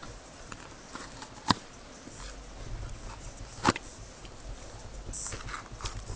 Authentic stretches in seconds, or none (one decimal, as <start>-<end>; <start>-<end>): 0.0-6.2